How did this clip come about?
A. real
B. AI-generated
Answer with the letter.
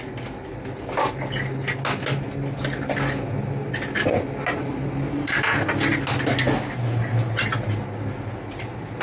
A